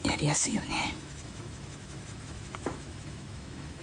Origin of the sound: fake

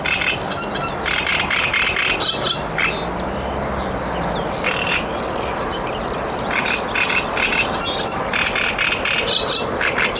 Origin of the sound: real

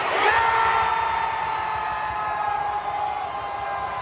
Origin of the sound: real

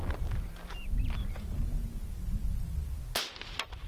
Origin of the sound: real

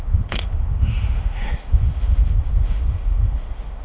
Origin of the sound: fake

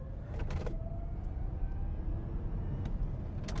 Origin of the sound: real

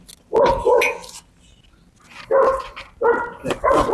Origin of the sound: real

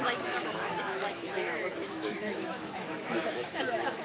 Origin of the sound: fake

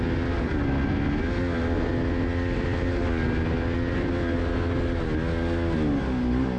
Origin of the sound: real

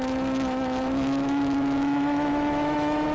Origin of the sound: fake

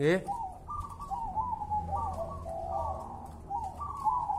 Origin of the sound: real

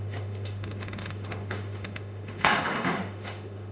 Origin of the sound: fake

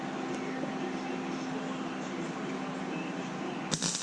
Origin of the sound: real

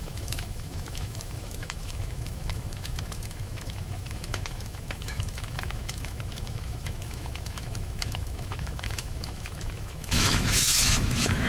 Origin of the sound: fake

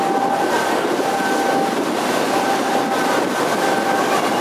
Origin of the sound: real